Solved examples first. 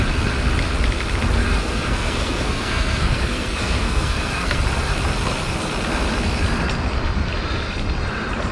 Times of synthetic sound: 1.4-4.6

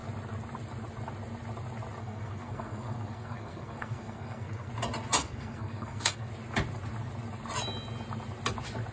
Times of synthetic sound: 2.0-4.7; 5.2-6.3

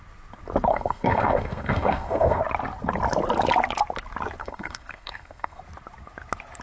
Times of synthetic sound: 0.7-2.4; 4.4-5.6